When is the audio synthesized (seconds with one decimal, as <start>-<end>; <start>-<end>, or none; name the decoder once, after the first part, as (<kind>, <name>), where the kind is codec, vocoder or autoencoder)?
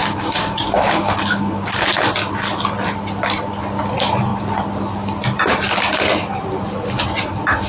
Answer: 0.0-1.7 (codec, DAC)